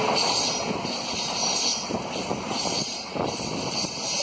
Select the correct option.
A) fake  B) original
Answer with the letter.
B